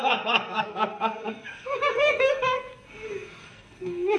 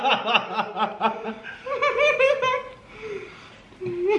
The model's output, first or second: first